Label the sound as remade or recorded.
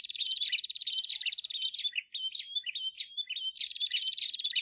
recorded